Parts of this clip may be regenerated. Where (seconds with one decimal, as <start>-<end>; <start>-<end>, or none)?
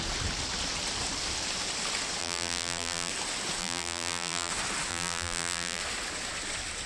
2.2-3.1; 3.6-4.5; 4.9-5.8